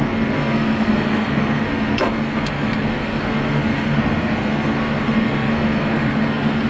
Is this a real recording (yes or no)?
no